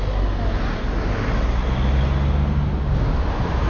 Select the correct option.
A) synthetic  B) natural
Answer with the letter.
B